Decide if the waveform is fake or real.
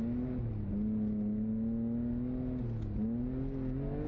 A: real